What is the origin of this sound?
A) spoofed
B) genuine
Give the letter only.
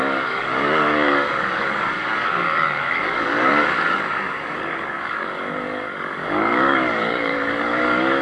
A